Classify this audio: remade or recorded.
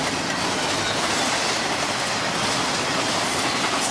recorded